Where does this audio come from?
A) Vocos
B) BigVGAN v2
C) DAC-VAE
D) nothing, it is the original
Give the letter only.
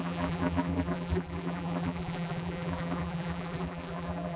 B